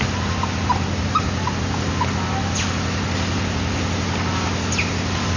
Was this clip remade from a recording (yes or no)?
no